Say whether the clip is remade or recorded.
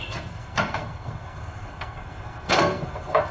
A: remade